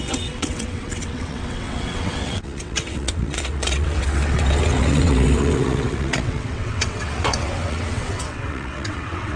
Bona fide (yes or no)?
no